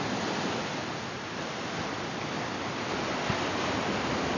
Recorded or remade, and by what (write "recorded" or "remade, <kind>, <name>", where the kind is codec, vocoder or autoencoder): recorded